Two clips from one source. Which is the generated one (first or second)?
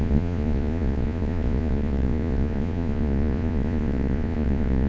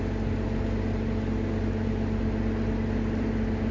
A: first